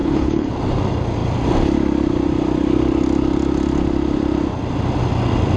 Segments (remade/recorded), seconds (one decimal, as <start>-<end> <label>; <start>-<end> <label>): 0.0-0.5 remade; 0.5-5.6 recorded